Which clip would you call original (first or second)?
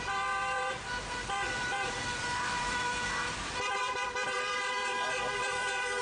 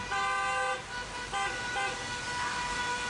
second